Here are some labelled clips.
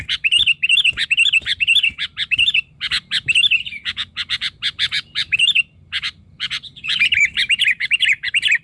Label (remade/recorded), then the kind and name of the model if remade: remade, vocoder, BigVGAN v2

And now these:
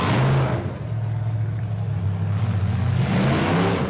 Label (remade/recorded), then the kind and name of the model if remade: recorded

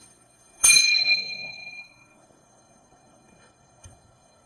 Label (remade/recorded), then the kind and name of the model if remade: remade, codec, SNAC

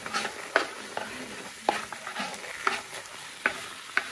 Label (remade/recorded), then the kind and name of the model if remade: recorded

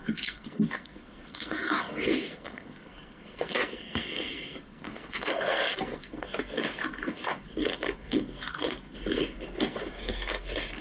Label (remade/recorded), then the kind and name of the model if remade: remade, codec, SNAC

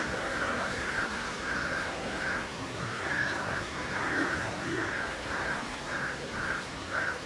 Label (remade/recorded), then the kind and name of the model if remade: remade, codec, SNAC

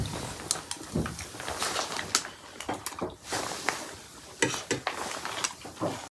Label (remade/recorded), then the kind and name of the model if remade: recorded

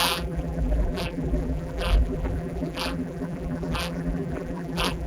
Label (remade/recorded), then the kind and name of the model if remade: remade, vocoder, BigVGAN v2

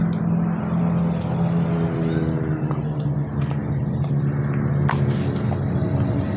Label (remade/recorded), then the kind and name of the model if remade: recorded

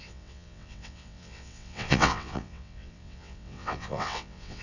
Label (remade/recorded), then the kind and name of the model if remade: remade, vocoder, WaveNeXt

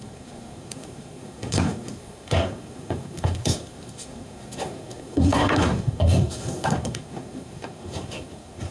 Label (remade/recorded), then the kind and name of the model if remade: remade, codec, SNAC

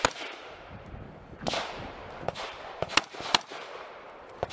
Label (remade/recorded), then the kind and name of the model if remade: remade, vocoder, BigVGAN v2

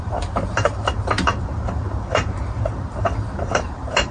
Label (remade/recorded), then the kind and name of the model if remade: remade, vocoder, BigVGAN v2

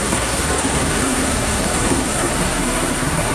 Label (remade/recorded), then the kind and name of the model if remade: remade, codec, SNAC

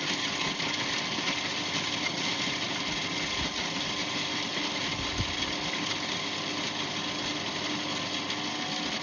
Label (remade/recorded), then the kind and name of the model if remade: recorded